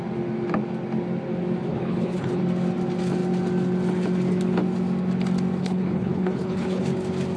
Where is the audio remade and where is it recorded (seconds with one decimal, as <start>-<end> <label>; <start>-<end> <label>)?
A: 0.0-1.7 recorded; 1.7-2.4 remade; 2.4-5.6 recorded; 5.6-6.8 remade; 6.8-7.4 recorded